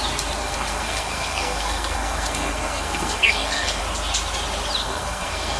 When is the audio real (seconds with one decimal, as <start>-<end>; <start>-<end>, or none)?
0.0-0.4; 3.8-4.8